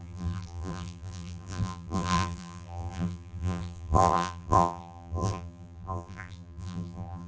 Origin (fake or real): fake